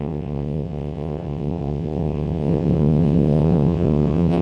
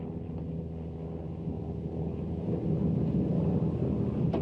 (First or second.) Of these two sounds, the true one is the second